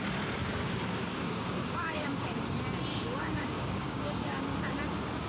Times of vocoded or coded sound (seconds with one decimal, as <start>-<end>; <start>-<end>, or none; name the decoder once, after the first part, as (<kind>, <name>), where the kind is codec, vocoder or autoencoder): 0.4-2.4 (codec, DAC); 2.9-4.4